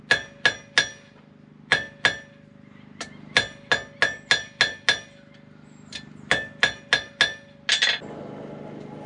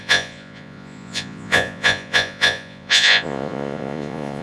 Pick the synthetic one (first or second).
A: second